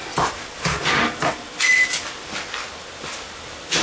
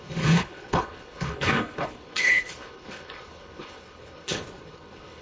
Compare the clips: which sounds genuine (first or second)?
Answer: first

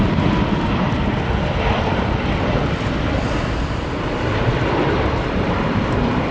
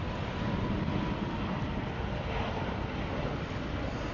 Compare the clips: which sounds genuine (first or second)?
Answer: second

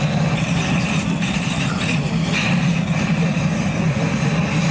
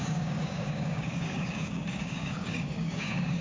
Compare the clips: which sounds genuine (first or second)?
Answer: first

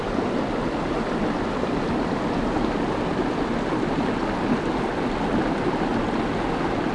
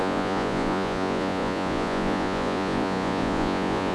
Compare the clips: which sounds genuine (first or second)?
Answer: first